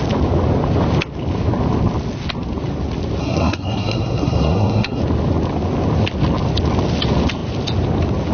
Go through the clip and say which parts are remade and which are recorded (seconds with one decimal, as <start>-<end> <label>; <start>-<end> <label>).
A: 0.0-3.2 recorded; 3.2-5.0 remade; 5.0-8.3 recorded